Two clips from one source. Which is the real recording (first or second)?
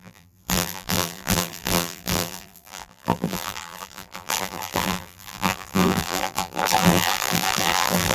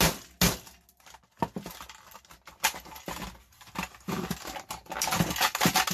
second